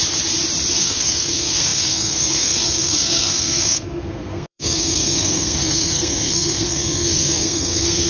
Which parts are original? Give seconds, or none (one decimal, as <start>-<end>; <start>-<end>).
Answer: 0.0-0.8